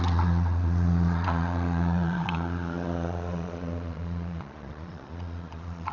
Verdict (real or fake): fake